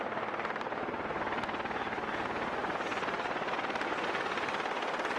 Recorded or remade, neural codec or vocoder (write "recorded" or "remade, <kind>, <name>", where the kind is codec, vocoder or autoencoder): remade, vocoder, BigVGAN v2